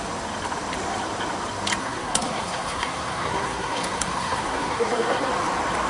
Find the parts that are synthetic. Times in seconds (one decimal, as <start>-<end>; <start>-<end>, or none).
1.8-5.3